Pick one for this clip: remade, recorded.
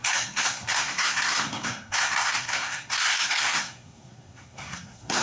remade